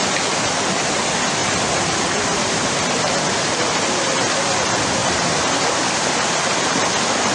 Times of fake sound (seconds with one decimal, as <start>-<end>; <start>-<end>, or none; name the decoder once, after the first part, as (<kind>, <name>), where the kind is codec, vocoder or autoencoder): 1.4-3.6 (vocoder, BigVGAN v2); 5.0-6.4